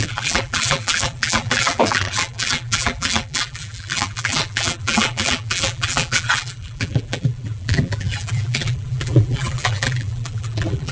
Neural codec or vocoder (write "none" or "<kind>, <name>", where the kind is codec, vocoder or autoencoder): vocoder, BigVGAN v2